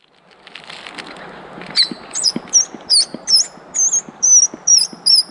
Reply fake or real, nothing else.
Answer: real